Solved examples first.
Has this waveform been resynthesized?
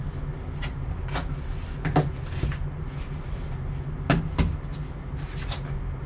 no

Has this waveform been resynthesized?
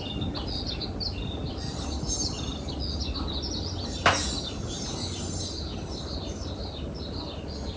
no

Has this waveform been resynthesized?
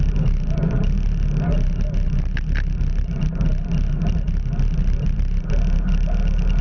no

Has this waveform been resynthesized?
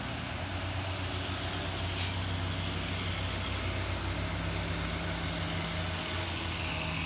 no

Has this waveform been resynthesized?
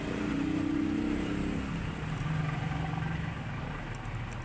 no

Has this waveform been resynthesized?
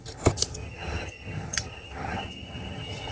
yes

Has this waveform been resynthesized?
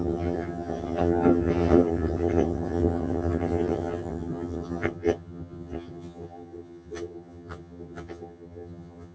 yes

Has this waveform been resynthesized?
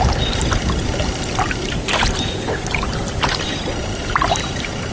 no